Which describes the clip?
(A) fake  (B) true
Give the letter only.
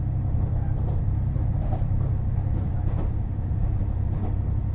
A